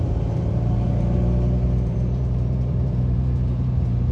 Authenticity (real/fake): fake